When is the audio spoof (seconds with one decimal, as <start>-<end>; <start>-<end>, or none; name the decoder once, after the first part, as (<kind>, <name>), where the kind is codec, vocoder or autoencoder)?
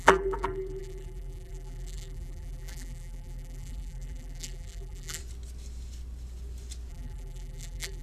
0.0-5.2 (vocoder, BigVGAN v2); 6.9-8.0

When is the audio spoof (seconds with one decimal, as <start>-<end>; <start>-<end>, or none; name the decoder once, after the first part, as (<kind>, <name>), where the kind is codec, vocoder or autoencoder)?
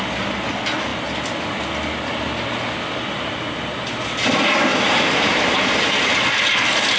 4.7-6.1 (vocoder, BigVGAN v2)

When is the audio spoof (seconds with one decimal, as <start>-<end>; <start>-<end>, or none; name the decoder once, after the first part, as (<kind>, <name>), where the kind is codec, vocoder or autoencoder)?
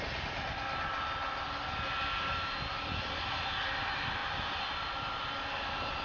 4.2-5.1 (vocoder, BigVGAN v2)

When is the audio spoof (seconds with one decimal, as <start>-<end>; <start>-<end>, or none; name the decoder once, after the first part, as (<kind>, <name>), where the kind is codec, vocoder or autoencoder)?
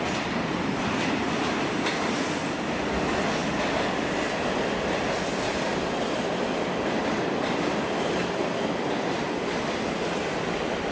none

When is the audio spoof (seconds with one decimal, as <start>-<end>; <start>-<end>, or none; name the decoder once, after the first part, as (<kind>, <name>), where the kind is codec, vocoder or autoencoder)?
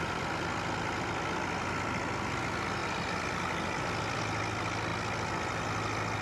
2.8-4.2 (vocoder, BigVGAN v2)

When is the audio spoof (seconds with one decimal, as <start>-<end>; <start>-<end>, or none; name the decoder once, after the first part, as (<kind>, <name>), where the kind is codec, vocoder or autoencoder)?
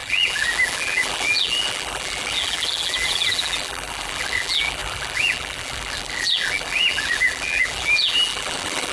0.0-8.9 (vocoder, BigVGAN v2)